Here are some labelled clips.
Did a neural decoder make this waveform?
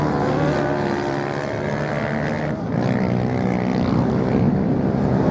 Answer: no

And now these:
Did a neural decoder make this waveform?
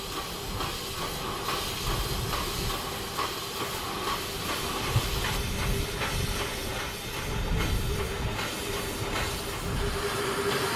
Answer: no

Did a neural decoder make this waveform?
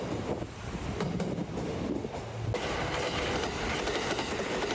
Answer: no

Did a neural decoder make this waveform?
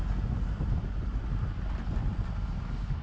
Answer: no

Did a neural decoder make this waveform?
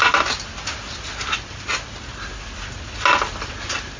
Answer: no